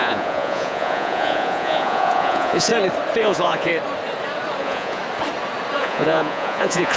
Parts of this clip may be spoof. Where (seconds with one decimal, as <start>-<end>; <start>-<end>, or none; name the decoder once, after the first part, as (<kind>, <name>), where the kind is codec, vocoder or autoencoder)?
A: 0.0-2.7 (vocoder, Vocos); 3.2-3.7; 4.6-5.0; 5.8-7.0